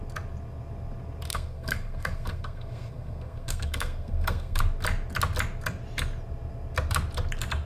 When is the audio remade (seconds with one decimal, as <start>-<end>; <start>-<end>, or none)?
1.3-4.6